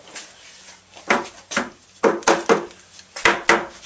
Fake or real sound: real